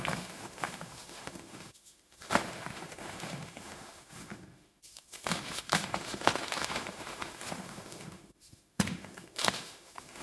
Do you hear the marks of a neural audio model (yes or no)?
yes